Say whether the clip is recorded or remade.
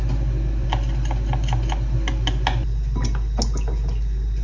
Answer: recorded